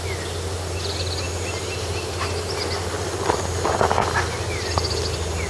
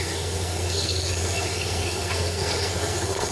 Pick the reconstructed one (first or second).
second